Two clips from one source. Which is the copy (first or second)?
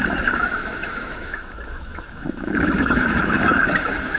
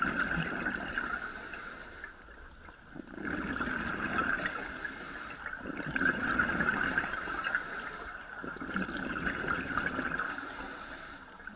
first